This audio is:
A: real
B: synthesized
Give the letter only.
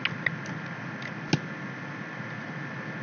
A